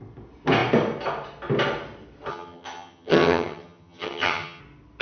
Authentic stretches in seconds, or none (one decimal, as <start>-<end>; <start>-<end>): 0.0-2.3; 4.6-5.0